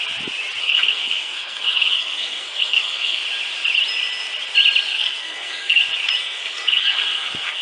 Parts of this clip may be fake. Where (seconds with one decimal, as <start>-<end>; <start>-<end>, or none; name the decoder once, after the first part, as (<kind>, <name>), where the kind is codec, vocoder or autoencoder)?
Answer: 0.6-3.2 (codec, SNAC); 4.9-5.8; 6.2-7.6

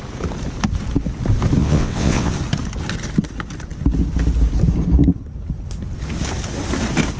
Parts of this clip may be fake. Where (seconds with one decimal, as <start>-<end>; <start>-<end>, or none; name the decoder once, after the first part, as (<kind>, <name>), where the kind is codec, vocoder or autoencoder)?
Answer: 1.6-2.3 (vocoder, WaveNeXt)